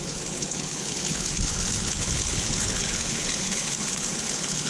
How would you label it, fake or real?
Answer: fake